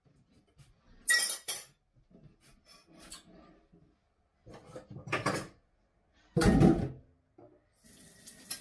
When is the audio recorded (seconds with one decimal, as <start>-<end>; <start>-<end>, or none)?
0.0-8.6

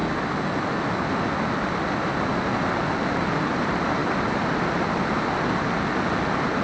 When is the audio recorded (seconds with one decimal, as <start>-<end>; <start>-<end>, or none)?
0.0-6.6

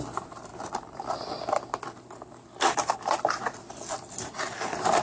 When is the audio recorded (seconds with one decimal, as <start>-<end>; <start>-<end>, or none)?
0.0-5.0

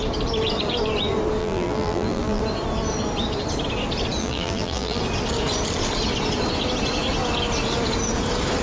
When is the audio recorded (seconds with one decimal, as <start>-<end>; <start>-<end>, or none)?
0.0-1.4; 2.4-4.2; 5.0-8.6

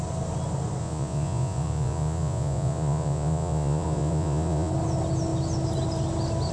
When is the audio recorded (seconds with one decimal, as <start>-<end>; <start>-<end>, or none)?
0.0-0.8; 4.7-6.5